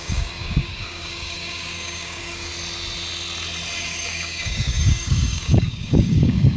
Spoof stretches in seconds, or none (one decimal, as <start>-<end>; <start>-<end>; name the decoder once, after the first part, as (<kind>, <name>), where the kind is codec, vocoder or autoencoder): 0.0-2.5 (codec, DAC); 3.8-6.6

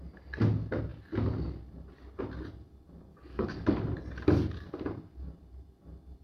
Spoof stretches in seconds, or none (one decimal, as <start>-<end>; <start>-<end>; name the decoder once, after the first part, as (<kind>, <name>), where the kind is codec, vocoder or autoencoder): 3.1-3.8 (codec, DAC)

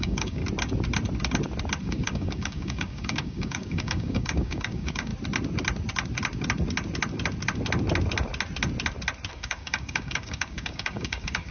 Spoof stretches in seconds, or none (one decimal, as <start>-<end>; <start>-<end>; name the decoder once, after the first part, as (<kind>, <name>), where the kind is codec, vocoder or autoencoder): 0.0-0.4 (codec, DAC); 1.8-5.1; 9.3-11.5